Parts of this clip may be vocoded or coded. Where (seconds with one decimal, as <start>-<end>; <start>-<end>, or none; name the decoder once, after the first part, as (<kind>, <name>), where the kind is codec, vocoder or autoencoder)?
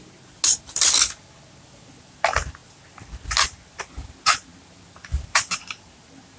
none